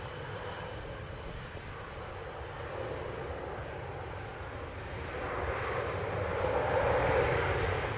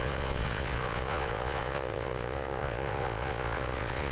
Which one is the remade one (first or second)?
second